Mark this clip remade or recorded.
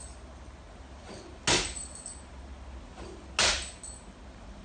recorded